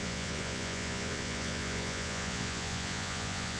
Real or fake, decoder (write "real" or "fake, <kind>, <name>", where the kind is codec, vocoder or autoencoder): fake, vocoder, Vocos